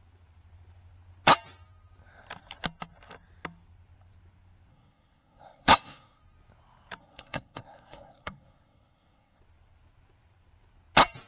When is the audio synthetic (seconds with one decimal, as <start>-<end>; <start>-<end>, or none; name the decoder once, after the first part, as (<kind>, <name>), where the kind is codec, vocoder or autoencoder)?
4.7-6.2 (codec, SNAC); 7.0-9.4